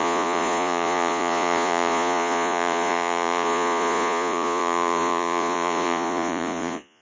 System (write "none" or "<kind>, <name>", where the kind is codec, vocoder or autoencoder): vocoder, Vocos